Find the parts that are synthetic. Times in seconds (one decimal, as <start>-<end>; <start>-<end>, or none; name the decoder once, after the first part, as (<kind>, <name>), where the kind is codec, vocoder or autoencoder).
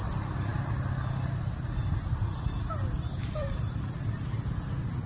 3.2-3.8 (vocoder, BigVGAN v2)